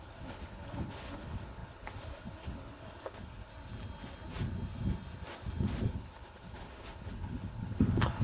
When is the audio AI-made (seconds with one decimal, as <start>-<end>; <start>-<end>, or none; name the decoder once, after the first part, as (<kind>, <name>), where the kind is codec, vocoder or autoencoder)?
0.0-3.5 (codec, HILCodec); 5.9-8.2